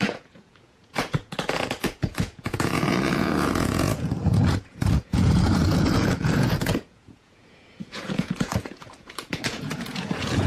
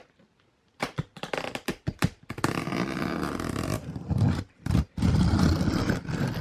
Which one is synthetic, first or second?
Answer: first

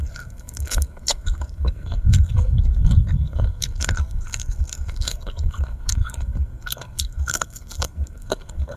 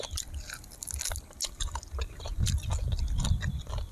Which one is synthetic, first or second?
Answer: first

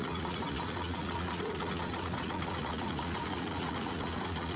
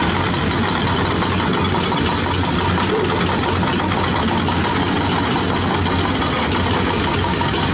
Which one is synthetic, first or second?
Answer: first